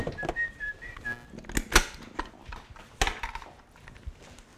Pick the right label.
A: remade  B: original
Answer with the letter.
B